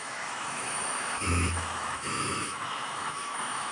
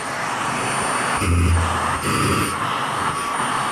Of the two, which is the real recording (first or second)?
second